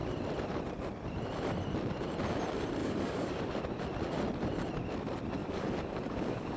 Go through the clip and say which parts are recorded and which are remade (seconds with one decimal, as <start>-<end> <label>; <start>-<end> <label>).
0.0-2.8 recorded; 2.8-3.5 remade; 3.5-5.4 recorded; 5.4-6.6 remade